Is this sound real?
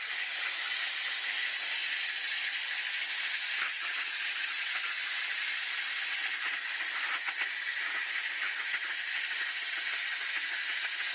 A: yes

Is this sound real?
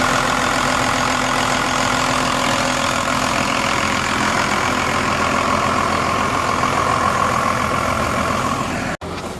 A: yes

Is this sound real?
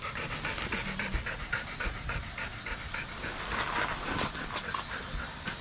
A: yes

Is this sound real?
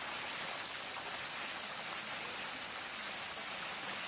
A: yes